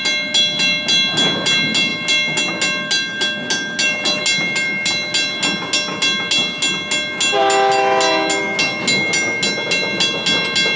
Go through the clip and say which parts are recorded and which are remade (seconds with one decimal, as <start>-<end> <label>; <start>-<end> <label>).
0.0-10.8 recorded